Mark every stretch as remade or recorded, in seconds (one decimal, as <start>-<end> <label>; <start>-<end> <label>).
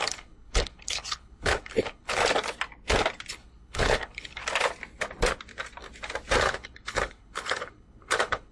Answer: 0.0-2.2 remade; 2.2-3.3 recorded; 3.3-4.4 remade; 4.4-6.4 recorded; 6.4-8.5 remade